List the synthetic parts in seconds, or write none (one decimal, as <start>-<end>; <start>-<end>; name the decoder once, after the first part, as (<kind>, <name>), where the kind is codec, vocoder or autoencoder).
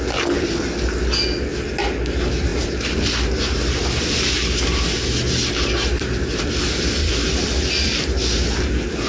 none